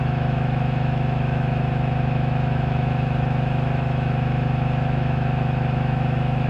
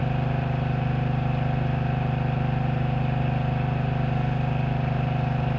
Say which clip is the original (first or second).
second